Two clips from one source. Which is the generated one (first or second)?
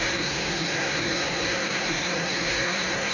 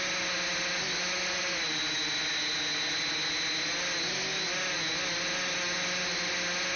first